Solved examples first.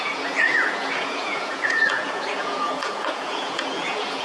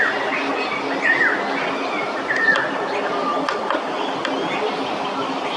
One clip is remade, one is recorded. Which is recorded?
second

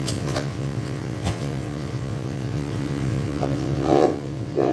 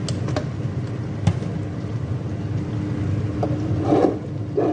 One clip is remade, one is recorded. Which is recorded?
second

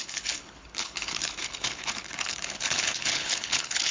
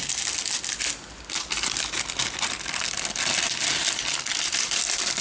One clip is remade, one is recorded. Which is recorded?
second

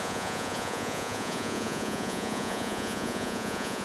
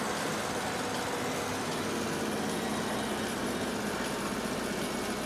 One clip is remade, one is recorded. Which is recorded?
second